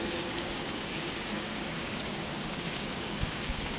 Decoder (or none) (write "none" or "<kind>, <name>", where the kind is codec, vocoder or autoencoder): codec, DAC